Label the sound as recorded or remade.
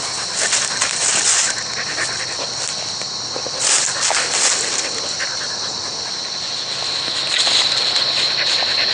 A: recorded